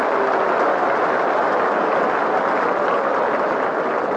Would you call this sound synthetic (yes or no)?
no